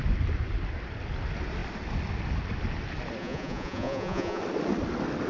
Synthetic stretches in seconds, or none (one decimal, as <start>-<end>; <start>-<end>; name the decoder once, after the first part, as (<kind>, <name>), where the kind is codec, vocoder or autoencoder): 3.2-4.4 (vocoder, Vocos)